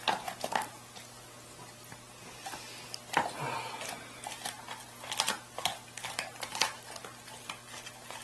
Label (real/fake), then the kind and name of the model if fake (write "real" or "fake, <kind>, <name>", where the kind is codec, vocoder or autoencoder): real